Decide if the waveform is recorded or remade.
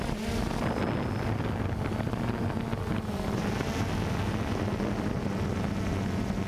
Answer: recorded